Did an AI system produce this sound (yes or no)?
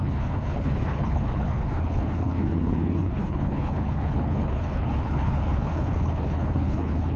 yes